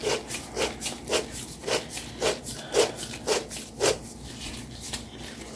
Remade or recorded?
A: recorded